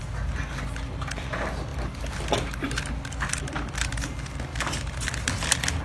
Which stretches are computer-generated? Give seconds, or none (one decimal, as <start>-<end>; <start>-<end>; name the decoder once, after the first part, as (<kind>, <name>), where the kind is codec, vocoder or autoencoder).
none